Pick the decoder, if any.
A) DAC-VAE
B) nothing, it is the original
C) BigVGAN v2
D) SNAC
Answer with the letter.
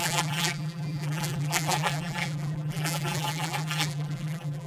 C